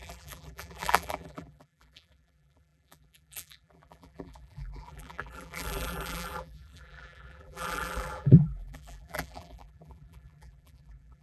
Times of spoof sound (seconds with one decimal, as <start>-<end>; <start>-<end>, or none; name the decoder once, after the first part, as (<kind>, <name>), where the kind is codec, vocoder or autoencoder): 0.0-11.2 (vocoder, BigVGAN v2)